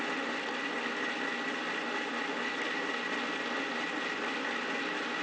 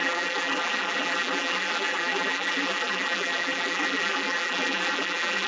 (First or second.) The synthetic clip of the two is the second